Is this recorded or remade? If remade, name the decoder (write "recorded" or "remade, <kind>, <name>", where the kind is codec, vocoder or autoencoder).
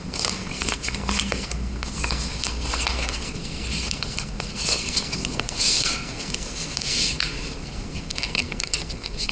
remade, codec, SNAC